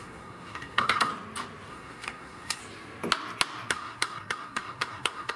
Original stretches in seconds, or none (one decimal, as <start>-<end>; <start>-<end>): 1.1-1.7; 2.6-3.7